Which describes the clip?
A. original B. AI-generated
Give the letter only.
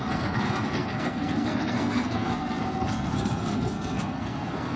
B